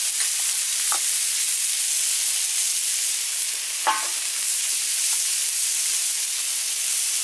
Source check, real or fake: real